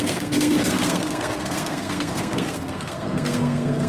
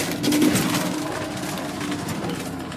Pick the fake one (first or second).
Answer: first